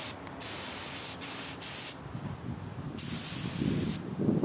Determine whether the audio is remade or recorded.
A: recorded